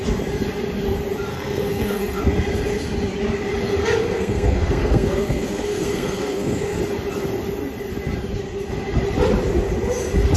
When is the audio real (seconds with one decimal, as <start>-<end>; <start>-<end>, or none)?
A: 0.0-1.3; 2.2-3.8; 6.8-10.4